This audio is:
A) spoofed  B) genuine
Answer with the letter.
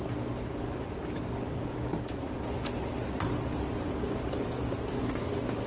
B